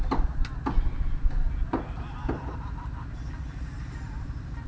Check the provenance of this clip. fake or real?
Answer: real